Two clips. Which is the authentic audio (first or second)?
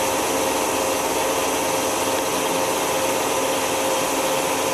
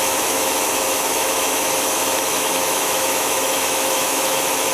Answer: first